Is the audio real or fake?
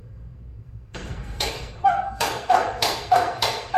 fake